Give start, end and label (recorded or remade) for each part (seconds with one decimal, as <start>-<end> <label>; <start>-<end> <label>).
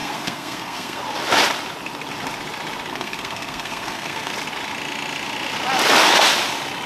0.0-1.0 remade; 1.0-2.9 recorded; 2.9-4.3 remade; 4.3-6.9 recorded